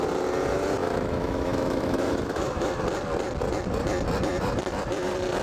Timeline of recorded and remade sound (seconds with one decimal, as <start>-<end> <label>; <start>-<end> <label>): 0.0-0.8 recorded; 0.8-2.7 remade; 2.7-5.4 recorded